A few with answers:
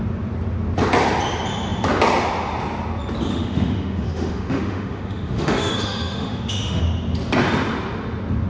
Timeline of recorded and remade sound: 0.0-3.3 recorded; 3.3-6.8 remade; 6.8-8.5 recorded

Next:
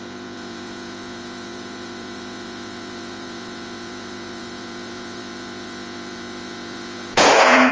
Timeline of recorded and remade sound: 0.0-7.7 remade

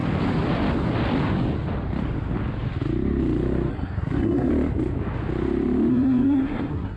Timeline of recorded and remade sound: 0.0-3.7 recorded; 3.7-4.5 remade; 4.5-5.9 recorded; 5.9-7.0 remade

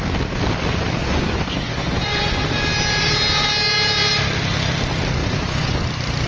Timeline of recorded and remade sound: 0.0-1.0 recorded; 1.0-2.4 remade; 2.4-5.2 recorded; 5.2-5.8 remade; 5.8-6.3 recorded

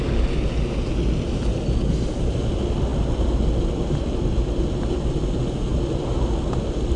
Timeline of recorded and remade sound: 0.0-7.0 recorded

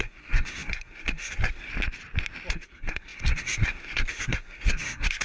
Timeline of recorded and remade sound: 0.0-1.7 remade; 1.7-2.5 recorded; 2.5-5.2 remade

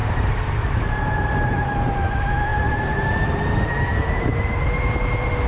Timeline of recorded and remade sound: 0.0-2.0 remade; 2.0-2.5 recorded; 2.5-4.1 remade; 4.1-5.5 recorded